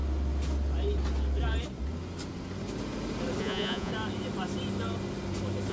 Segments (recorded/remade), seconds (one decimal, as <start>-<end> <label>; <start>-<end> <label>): 0.0-3.4 recorded; 3.4-3.9 remade; 3.9-5.7 recorded